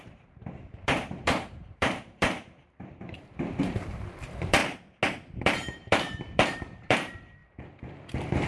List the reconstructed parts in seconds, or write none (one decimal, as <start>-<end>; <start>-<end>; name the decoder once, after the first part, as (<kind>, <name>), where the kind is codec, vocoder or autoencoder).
0.0-4.6 (vocoder, BigVGAN v2); 5.1-8.5